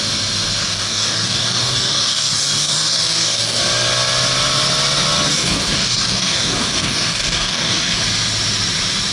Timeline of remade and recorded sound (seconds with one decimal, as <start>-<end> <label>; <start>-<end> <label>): 0.0-0.6 recorded; 0.6-3.6 remade; 3.6-5.3 recorded; 5.3-8.0 remade; 8.0-9.1 recorded